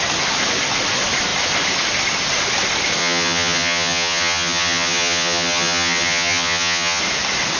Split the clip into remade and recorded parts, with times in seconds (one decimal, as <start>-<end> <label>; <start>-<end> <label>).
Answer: 0.0-3.0 recorded; 3.0-7.0 remade; 7.0-7.6 recorded